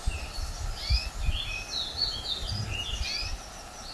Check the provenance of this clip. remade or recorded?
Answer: recorded